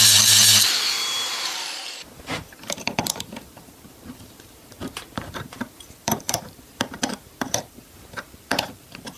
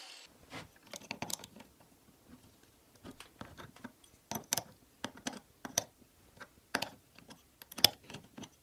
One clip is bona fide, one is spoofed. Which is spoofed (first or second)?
first